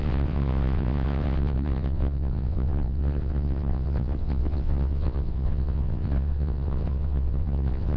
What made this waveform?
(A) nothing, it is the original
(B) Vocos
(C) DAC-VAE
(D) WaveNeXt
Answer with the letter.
D